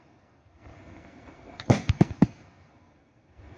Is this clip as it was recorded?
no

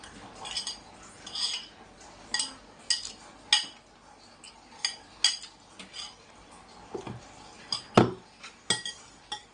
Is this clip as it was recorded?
yes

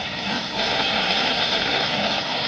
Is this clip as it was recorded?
no